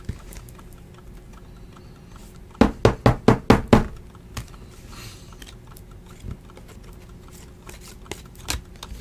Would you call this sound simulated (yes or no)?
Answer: no